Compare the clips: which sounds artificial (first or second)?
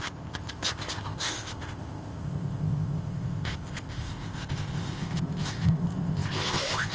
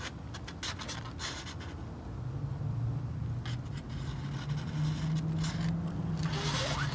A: first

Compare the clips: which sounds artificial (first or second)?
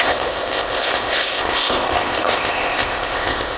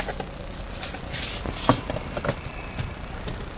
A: first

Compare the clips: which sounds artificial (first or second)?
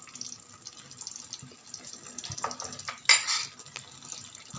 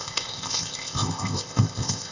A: second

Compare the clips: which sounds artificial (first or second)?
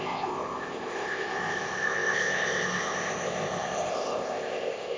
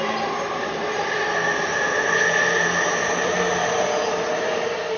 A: first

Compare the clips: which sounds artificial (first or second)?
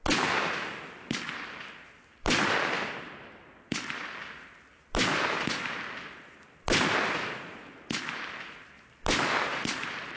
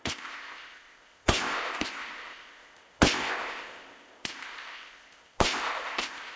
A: second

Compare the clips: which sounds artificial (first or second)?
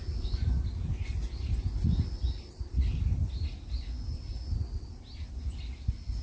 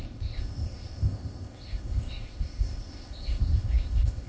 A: second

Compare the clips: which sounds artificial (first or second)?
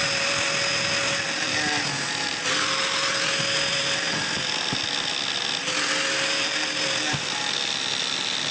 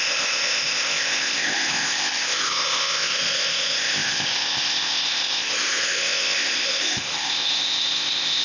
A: second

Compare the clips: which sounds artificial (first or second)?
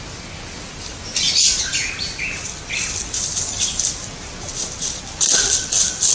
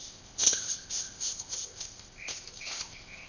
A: second